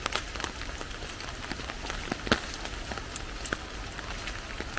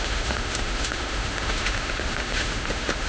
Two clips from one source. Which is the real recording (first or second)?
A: first